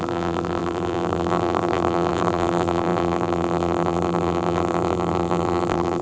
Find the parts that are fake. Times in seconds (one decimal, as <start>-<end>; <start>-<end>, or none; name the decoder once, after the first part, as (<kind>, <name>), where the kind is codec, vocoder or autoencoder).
0.0-6.0 (vocoder, BigVGAN v2)